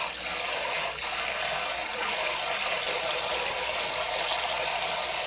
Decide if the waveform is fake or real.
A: real